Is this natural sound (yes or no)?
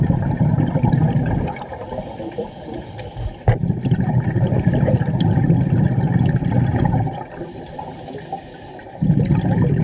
yes